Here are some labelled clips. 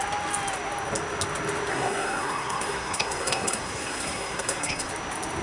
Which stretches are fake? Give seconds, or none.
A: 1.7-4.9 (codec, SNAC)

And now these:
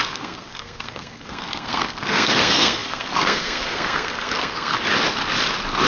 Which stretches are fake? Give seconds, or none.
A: 0.0-4.7 (codec, SNAC)

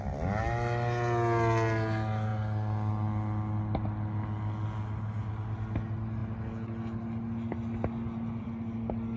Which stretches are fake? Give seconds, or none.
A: none

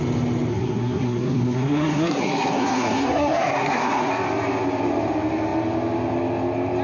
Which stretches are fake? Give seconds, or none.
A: 0.5-4.1 (codec, SNAC)